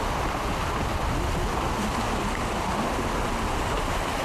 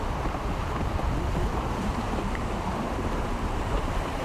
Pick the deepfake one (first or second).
second